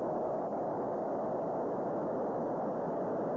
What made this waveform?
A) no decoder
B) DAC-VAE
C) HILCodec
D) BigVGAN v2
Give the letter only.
A